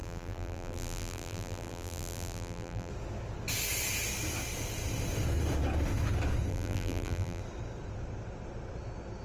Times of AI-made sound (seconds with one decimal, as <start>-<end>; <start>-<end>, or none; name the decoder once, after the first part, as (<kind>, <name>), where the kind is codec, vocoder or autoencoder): 0.0-2.9 (vocoder, BigVGAN v2); 6.5-7.4